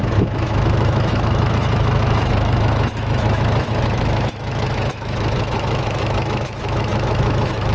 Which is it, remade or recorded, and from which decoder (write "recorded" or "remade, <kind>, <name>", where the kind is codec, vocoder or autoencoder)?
remade, autoencoder, DAC-VAE